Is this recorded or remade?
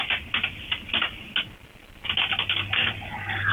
recorded